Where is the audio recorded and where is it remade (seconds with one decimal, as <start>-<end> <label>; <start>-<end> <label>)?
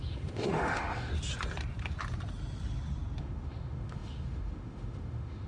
0.0-1.1 remade; 1.1-3.2 recorded; 3.2-5.5 remade